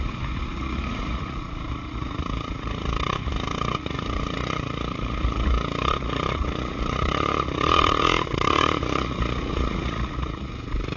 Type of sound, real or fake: fake